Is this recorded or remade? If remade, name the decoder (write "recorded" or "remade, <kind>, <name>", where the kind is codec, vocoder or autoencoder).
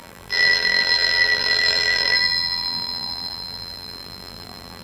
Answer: remade, vocoder, BigVGAN v2